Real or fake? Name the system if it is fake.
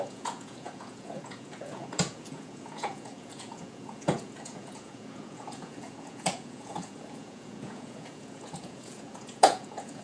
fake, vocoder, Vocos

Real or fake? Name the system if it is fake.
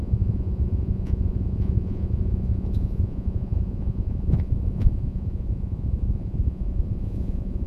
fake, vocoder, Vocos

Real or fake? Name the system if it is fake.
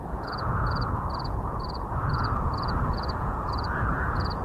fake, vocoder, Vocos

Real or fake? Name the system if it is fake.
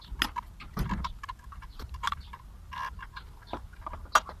real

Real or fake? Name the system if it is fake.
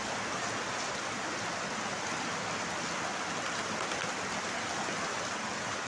real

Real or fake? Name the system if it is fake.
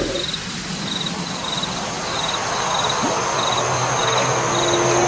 real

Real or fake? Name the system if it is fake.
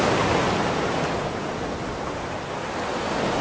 real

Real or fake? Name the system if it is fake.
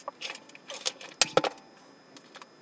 real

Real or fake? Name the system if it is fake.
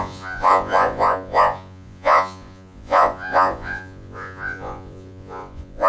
fake, vocoder, Vocos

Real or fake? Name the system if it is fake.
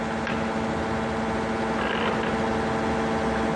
real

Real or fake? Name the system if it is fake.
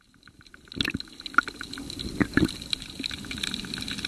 real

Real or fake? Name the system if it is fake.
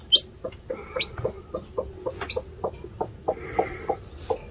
real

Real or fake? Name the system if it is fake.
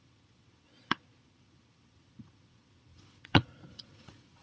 fake, vocoder, Vocos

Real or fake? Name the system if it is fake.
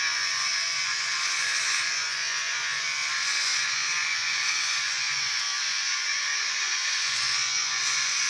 fake, vocoder, Vocos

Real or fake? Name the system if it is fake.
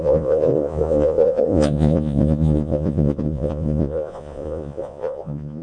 fake, vocoder, Vocos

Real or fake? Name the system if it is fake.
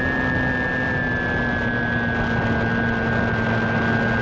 real